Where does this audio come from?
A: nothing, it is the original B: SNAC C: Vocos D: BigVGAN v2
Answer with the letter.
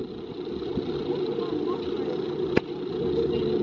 A